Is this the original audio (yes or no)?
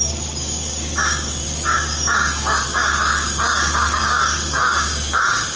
no